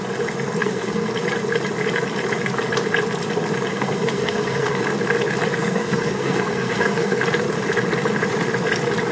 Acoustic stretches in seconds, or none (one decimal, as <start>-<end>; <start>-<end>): 0.0-0.6; 1.1-3.7; 4.8-5.6; 7.2-9.1